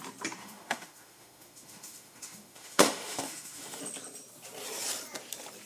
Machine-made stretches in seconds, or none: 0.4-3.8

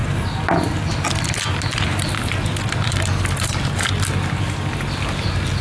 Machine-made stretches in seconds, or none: none

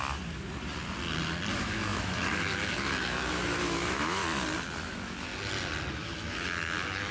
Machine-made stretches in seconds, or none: 1.5-4.2; 4.8-5.3; 5.9-7.1

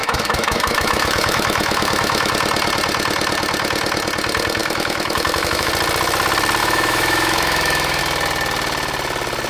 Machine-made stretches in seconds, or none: 0.0-2.3; 4.6-5.7; 6.6-8.0

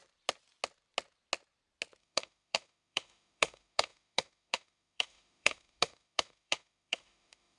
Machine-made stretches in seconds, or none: 2.0-7.6